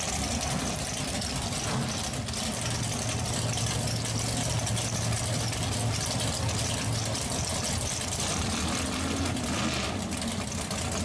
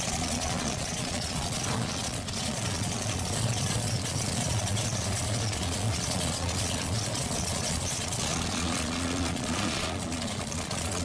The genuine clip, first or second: first